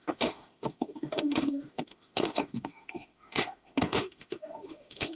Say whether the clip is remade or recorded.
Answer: remade